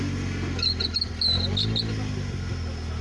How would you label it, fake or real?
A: real